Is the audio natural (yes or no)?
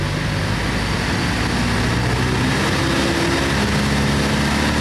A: yes